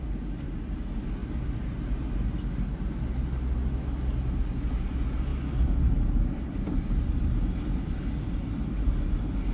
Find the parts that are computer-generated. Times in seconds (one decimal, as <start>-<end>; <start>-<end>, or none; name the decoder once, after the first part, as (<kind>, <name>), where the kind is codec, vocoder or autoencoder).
none